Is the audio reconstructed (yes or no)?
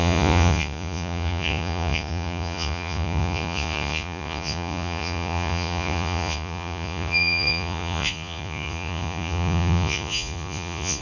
yes